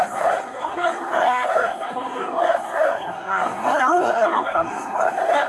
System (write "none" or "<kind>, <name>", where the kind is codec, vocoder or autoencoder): codec, SNAC